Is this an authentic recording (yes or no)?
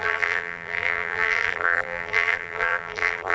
no